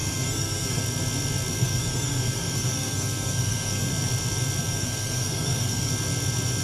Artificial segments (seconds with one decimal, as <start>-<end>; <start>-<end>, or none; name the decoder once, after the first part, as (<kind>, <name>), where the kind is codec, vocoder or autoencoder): 0.0-0.8 (codec, SNAC); 1.5-3.9; 4.6-5.9